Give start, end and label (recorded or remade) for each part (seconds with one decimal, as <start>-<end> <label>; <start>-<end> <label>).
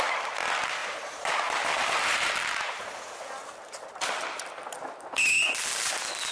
0.0-0.8 recorded; 0.8-2.3 remade; 2.3-6.3 recorded